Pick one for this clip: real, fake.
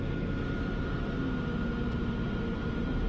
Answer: real